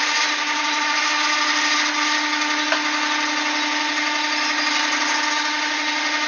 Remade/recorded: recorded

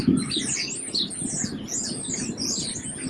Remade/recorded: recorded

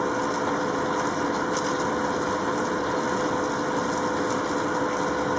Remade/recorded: recorded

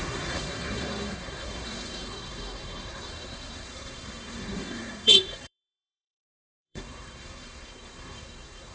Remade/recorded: remade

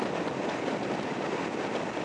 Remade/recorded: recorded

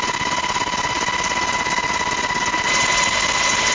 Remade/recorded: recorded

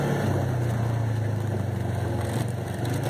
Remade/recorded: recorded